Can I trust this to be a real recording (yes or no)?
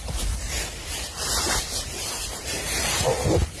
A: no